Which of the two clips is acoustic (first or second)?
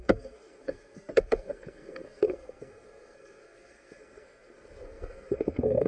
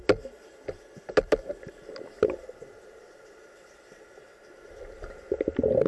second